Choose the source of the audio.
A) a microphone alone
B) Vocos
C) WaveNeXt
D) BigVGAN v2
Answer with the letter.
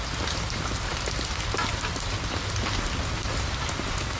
A